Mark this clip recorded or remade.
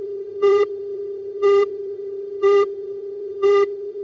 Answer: remade